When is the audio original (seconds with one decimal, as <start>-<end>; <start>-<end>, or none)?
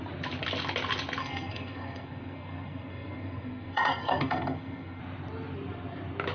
0.0-1.2; 5.0-6.3